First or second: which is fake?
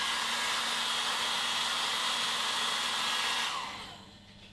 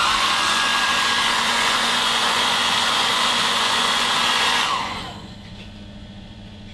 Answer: second